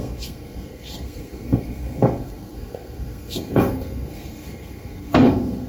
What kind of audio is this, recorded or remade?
remade